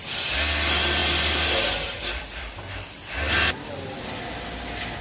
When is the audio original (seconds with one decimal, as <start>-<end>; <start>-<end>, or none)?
0.0-5.0